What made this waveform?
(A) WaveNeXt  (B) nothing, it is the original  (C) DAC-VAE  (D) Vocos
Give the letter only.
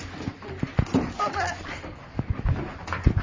B